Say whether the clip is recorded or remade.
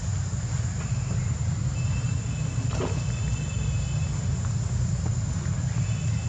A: recorded